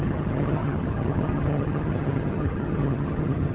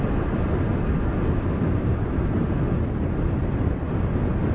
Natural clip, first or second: second